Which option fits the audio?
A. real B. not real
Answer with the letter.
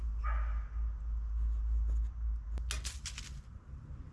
A